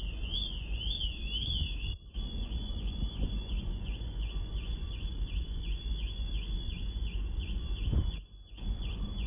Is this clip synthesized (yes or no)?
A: yes